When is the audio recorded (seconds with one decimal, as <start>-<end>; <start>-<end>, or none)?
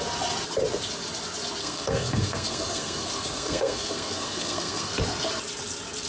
0.0-1.6; 4.9-6.1